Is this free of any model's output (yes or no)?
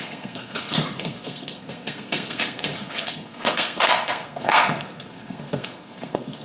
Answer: no